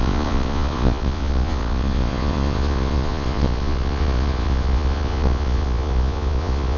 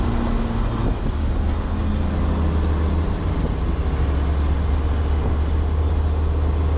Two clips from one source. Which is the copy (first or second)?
first